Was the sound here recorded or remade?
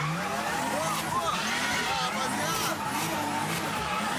recorded